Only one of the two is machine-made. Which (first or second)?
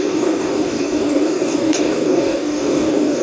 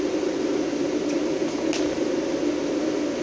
first